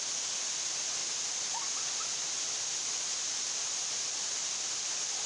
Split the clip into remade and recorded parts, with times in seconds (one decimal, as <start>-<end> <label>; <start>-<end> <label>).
0.0-5.3 recorded